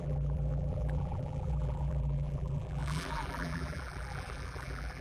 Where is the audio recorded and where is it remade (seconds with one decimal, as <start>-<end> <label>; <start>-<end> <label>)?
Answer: 0.0-5.0 remade